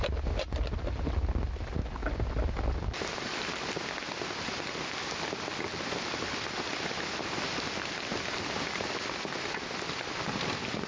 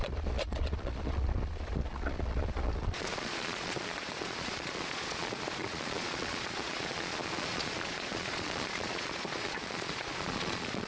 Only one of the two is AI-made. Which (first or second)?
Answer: second